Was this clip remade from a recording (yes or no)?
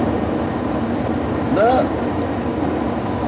no